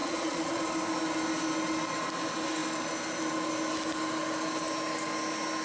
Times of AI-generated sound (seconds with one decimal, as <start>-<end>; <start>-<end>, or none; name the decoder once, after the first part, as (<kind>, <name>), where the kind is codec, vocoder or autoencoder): 0.0-0.6 (vocoder, Vocos)